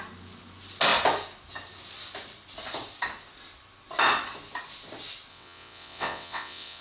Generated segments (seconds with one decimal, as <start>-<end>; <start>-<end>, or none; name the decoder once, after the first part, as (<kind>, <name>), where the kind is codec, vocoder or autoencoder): 5.3-6.8 (vocoder, WaveNeXt)